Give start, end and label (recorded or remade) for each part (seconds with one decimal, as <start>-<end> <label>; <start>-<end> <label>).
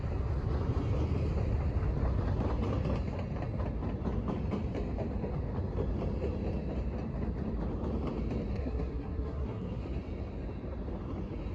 0.0-8.5 recorded; 8.5-9.8 remade; 9.8-11.5 recorded